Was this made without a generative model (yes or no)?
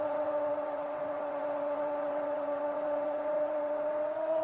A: no